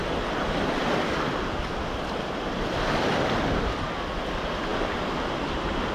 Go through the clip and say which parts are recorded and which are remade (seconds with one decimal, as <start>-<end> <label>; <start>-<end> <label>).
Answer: 0.0-5.9 recorded